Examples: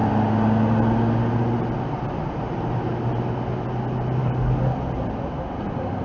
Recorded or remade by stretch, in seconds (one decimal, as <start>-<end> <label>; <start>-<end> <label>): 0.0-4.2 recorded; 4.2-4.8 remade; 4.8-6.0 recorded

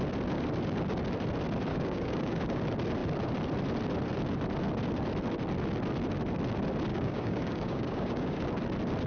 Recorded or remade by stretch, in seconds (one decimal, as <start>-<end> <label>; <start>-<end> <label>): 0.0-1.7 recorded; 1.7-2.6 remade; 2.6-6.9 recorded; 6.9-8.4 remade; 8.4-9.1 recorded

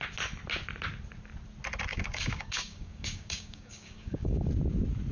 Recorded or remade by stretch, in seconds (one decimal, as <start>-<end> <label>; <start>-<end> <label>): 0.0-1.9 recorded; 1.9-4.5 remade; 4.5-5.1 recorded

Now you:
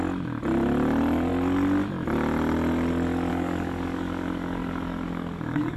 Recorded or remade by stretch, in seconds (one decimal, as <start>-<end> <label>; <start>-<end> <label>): 0.0-3.3 recorded; 3.3-5.8 remade

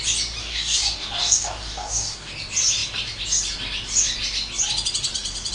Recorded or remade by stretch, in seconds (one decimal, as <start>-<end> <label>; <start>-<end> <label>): 0.0-0.4 recorded; 0.4-2.3 remade; 2.3-5.5 recorded

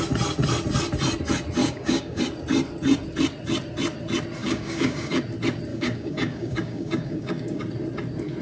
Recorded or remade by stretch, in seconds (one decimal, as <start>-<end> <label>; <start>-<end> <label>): 0.0-1.6 recorded; 1.6-2.2 remade; 2.2-4.4 recorded; 4.4-5.2 remade; 5.2-5.7 recorded; 5.7-7.6 remade; 7.6-8.4 recorded